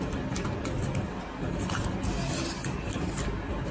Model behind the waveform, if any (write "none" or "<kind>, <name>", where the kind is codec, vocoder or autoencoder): none